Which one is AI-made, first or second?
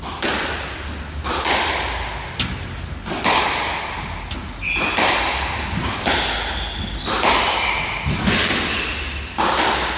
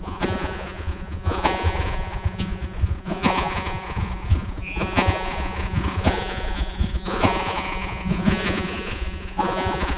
second